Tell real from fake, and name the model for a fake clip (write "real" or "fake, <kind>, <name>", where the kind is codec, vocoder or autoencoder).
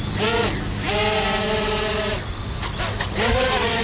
real